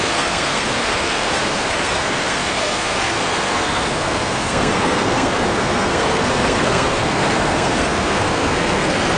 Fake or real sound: fake